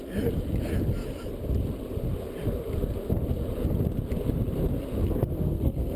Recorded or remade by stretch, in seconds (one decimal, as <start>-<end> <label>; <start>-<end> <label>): 0.0-5.0 recorded; 5.0-6.0 remade